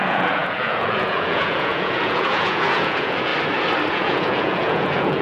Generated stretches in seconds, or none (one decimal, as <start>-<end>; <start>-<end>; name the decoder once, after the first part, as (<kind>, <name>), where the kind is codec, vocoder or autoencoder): 0.0-3.3 (vocoder, Vocos); 3.9-5.2